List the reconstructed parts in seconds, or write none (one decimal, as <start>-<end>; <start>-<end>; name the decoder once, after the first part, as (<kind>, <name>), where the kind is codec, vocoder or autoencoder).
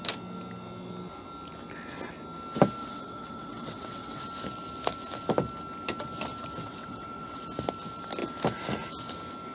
2.8-4.2 (vocoder, WaveNeXt); 6.6-7.4